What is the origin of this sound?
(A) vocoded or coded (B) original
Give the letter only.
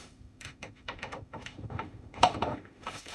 A